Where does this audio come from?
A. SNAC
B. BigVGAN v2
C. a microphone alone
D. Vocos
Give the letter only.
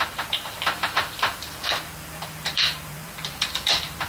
B